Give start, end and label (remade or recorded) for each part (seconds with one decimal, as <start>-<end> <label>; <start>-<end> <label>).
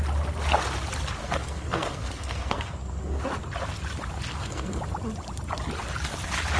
0.0-1.2 recorded; 1.2-3.2 remade; 3.2-4.3 recorded; 4.3-4.8 remade; 4.8-6.6 recorded